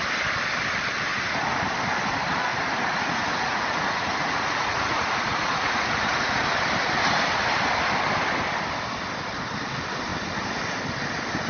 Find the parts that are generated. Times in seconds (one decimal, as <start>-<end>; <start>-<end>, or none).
1.1-1.6; 2.5-6.4